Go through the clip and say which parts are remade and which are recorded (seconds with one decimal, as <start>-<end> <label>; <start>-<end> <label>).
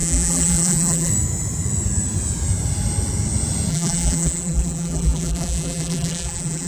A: 0.0-1.1 remade; 1.1-3.7 recorded; 3.7-6.7 remade